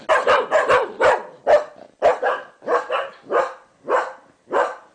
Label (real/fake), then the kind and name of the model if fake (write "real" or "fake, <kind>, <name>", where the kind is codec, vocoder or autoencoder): real